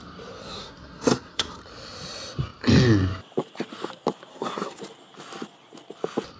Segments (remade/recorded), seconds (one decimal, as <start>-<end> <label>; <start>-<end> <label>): 0.0-0.4 recorded; 0.4-1.6 remade; 1.6-4.3 recorded; 4.3-4.8 remade; 4.8-6.4 recorded